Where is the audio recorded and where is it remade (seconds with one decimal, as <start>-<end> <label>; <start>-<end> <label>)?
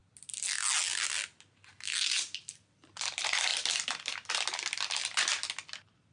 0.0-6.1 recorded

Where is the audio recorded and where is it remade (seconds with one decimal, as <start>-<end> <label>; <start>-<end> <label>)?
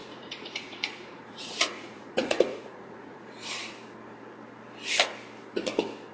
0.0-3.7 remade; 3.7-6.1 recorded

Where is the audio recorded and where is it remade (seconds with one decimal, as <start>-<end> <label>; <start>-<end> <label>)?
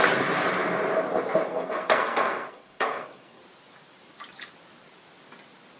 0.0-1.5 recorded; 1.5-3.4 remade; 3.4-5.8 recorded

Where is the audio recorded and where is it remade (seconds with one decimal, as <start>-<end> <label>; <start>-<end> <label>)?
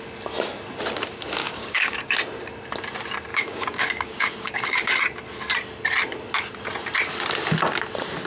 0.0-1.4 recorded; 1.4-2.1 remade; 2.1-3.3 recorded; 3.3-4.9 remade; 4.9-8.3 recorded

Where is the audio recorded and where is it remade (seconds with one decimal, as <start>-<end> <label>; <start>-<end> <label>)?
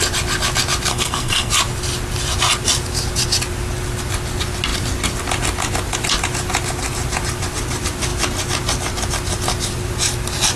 0.0-0.9 recorded; 0.9-1.5 remade; 1.5-10.6 recorded